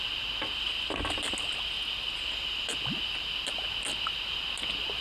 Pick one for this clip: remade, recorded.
recorded